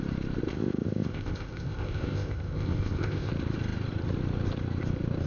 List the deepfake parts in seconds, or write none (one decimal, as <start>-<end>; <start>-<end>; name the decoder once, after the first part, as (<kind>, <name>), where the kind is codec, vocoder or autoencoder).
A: 0.5-3.3 (codec, ZipCodec)